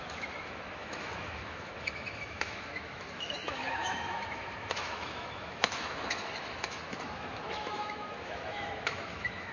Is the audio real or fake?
fake